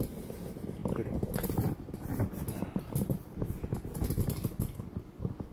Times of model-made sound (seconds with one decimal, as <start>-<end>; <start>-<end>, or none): none